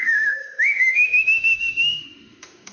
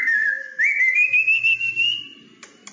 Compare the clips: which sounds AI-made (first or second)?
first